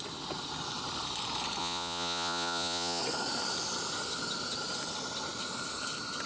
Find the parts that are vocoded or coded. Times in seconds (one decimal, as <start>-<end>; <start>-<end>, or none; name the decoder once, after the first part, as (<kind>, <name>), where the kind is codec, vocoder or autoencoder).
1.6-3.0 (vocoder, Vocos)